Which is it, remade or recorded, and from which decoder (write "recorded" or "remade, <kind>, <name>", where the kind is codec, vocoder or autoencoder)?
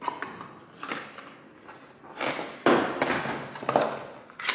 recorded